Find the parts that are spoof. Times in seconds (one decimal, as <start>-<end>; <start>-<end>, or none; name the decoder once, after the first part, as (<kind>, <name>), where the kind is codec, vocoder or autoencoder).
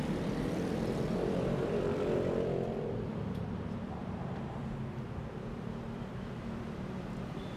0.0-7.6 (vocoder, BigVGAN v2)